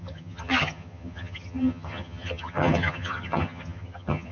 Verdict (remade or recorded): remade